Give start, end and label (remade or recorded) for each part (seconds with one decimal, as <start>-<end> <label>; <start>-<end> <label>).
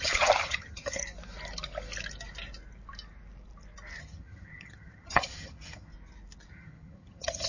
0.0-1.0 remade; 1.0-4.0 recorded; 4.0-5.9 remade; 5.9-6.5 recorded; 6.5-7.5 remade